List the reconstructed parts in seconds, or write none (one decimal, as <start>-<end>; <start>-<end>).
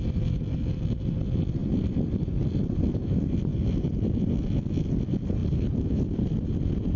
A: 1.6-2.2; 5.4-7.0